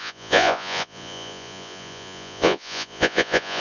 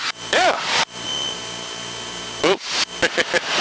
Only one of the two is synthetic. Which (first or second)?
first